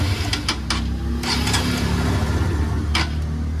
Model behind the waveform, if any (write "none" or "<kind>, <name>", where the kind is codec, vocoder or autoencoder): none